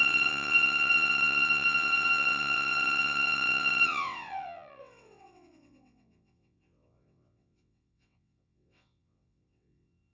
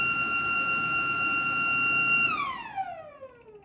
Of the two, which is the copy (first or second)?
first